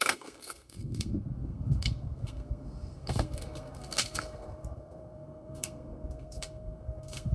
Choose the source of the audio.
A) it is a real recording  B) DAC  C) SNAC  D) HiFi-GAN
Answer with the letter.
C